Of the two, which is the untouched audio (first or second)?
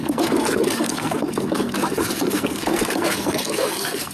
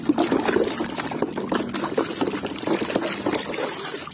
second